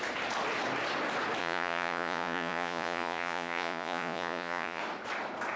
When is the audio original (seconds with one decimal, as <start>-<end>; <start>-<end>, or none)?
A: 0.0-1.4; 4.8-5.6